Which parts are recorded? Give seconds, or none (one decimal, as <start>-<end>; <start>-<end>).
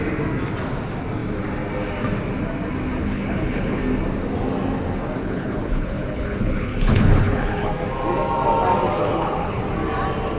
0.0-3.0; 3.8-5.2; 7.7-9.0; 9.6-10.4